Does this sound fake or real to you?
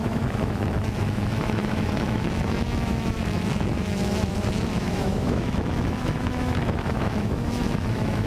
fake